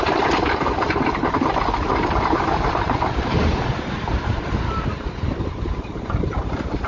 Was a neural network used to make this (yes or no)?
yes